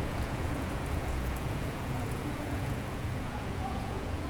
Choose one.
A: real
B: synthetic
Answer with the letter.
B